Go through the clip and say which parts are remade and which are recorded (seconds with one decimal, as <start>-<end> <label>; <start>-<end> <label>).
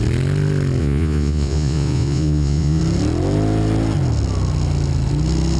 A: 0.0-0.8 recorded; 0.8-2.8 remade; 2.8-5.6 recorded